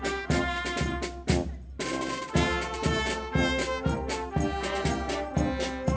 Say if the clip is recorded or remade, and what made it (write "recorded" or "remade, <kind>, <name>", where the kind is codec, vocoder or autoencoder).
recorded